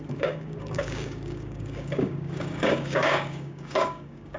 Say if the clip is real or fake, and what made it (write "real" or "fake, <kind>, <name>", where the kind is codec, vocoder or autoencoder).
fake, codec, DAC